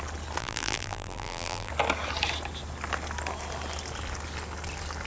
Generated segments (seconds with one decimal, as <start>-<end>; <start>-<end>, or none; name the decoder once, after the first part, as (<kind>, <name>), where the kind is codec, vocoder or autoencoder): 0.4-1.7 (vocoder, BigVGAN v2)